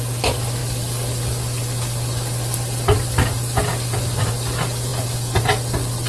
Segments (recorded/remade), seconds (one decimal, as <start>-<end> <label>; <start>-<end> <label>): 0.0-6.1 recorded